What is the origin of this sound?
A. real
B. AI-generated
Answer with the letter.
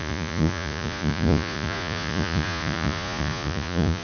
B